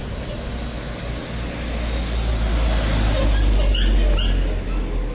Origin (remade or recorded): recorded